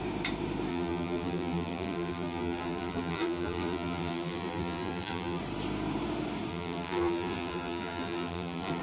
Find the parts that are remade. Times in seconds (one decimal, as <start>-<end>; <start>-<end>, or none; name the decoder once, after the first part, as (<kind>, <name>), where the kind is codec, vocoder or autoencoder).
0.7-5.4 (vocoder, BigVGAN v2); 6.5-8.8